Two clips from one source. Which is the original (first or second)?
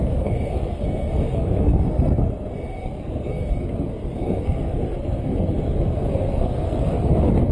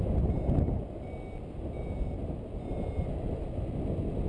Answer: second